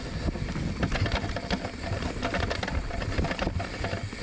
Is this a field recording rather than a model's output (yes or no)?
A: yes